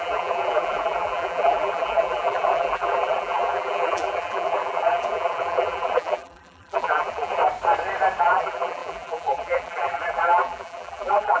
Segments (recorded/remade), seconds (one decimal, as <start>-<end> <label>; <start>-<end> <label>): 0.0-7.4 remade; 7.4-8.2 recorded; 8.2-11.4 remade